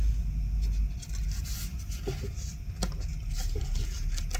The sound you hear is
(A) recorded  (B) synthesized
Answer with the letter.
A